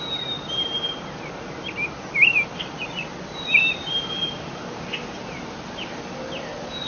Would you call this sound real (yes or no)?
yes